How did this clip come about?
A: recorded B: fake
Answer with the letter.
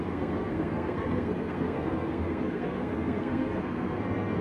B